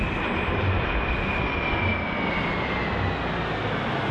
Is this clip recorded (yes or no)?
yes